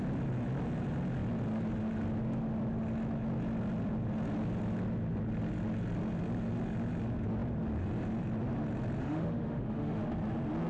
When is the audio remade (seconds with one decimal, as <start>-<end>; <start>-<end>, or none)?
9.0-10.0